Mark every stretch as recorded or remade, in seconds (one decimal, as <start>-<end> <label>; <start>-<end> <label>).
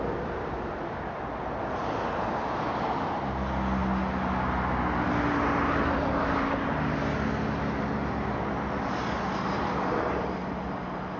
0.0-11.2 recorded